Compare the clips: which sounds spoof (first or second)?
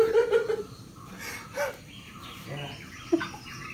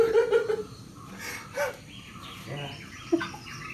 first